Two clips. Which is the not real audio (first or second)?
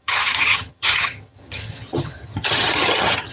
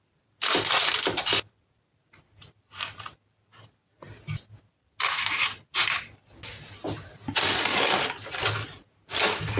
first